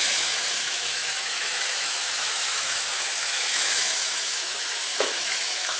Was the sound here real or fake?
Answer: fake